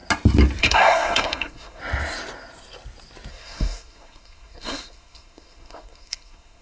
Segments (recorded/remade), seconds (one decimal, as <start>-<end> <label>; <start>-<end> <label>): 0.0-0.6 recorded; 0.6-1.8 remade; 1.8-3.3 recorded; 3.3-6.6 remade